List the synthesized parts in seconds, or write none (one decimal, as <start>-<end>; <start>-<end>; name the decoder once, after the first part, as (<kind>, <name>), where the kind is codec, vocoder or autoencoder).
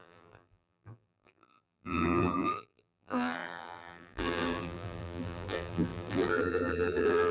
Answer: 0.0-7.3 (vocoder, BigVGAN v2)